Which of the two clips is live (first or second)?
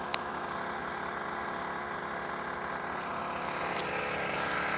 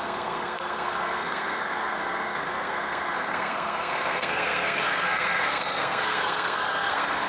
first